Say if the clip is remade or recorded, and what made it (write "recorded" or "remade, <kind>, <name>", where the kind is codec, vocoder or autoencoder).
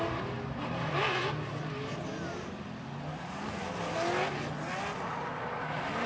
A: recorded